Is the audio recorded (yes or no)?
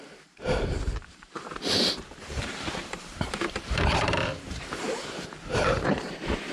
no